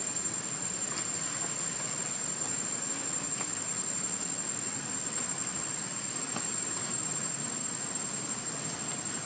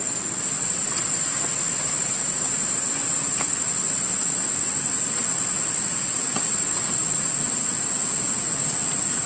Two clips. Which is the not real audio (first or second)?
first